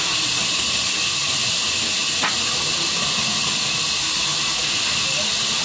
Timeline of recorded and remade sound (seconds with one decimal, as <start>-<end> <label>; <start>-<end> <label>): 0.0-5.6 recorded